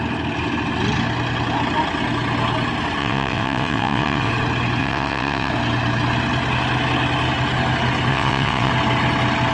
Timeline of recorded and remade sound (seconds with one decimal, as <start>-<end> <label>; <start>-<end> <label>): 0.0-3.0 recorded; 3.0-4.3 remade; 4.3-4.8 recorded; 4.8-5.5 remade; 5.5-8.1 recorded; 8.1-8.7 remade; 8.7-9.5 recorded